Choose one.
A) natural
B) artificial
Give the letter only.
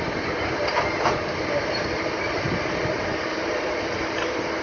B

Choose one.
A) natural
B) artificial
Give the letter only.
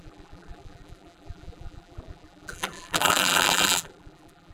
B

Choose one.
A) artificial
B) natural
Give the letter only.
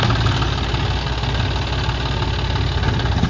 B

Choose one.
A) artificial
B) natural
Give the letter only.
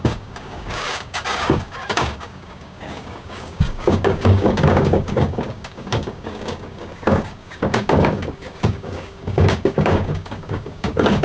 A